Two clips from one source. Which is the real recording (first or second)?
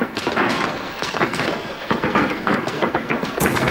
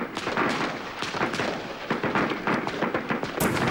second